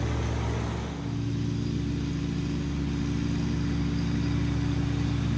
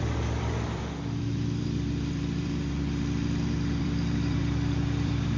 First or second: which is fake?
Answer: second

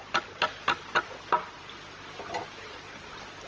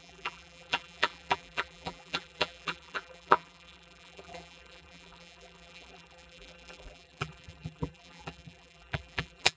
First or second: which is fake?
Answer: second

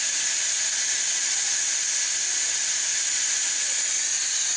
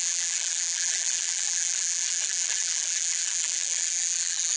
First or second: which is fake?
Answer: second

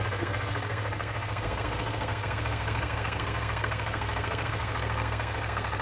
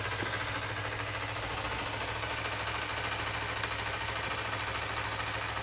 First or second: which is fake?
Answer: first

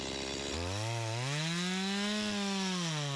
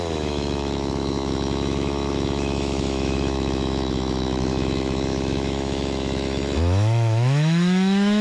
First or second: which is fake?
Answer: second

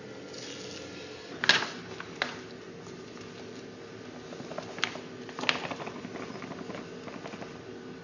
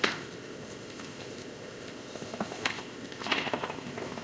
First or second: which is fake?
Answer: second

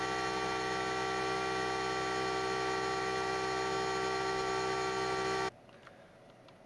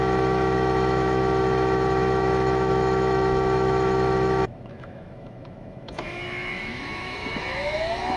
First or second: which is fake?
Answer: second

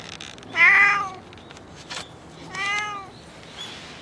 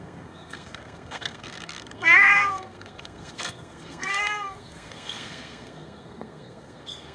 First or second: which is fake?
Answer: second